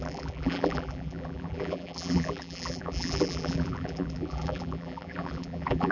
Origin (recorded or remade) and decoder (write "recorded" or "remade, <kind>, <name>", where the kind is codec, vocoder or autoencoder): remade, vocoder, BigVGAN v2